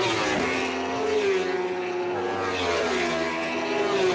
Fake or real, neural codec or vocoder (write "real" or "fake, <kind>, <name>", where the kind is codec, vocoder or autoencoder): real